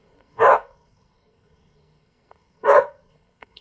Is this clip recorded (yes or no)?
no